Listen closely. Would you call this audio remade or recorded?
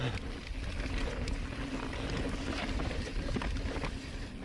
recorded